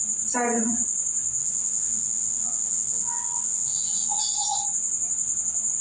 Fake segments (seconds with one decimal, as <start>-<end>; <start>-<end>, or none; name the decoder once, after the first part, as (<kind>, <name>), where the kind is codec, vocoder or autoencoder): 1.4-4.2 (vocoder, WaveNeXt)